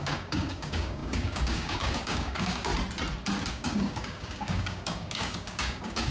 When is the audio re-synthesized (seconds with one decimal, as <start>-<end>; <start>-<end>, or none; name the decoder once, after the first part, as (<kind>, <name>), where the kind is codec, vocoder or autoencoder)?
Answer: 0.0-2.7 (codec, DAC); 3.5-6.1